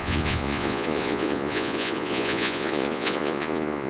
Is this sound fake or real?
fake